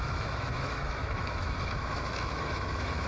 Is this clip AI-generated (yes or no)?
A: yes